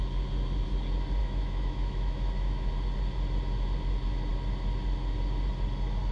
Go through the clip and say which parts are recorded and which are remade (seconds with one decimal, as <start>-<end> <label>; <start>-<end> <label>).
0.0-1.2 recorded; 1.2-2.7 remade; 2.7-6.1 recorded

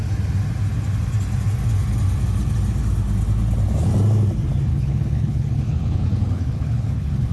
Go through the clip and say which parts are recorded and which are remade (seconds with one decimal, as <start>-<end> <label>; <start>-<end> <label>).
0.0-4.7 recorded; 4.7-7.3 remade

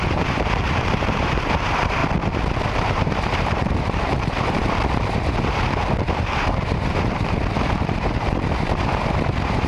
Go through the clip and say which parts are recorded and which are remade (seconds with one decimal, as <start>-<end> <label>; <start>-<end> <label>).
0.0-2.0 remade; 2.0-2.6 recorded; 2.6-9.7 remade